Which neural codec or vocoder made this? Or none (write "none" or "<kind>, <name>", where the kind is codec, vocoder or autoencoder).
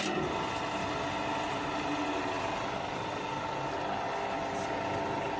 none